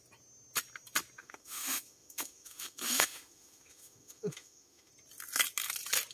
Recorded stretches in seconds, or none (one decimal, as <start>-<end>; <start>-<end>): 0.0-1.2; 4.9-6.1